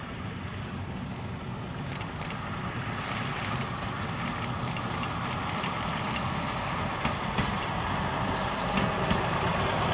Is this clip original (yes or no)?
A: yes